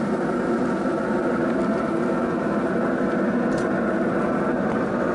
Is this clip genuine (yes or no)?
yes